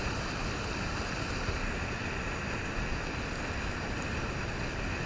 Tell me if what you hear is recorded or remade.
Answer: recorded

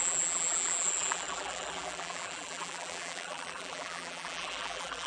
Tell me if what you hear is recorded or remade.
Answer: remade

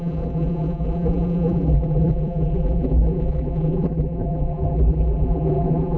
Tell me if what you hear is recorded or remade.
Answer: remade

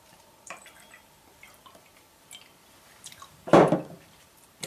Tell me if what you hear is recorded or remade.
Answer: remade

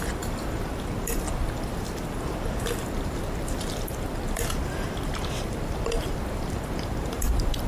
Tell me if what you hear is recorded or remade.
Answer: remade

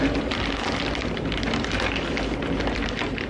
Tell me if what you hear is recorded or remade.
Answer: remade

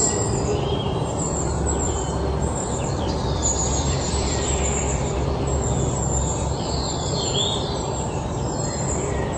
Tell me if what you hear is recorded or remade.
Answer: remade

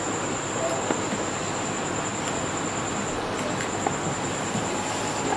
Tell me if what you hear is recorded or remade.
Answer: recorded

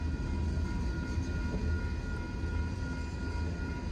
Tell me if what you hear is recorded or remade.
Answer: recorded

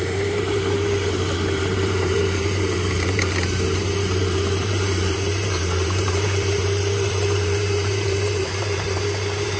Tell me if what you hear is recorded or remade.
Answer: remade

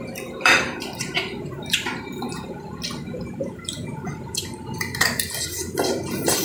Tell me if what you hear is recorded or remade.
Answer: remade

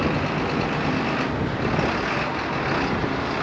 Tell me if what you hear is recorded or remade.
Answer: recorded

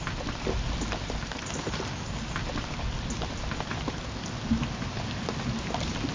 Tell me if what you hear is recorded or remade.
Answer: recorded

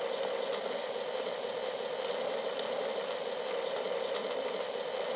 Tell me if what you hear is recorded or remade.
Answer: recorded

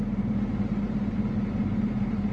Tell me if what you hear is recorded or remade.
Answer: recorded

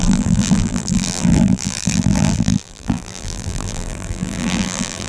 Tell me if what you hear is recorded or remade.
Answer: remade